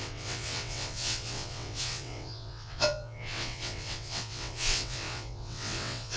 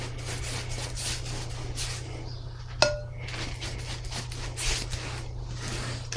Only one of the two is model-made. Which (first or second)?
first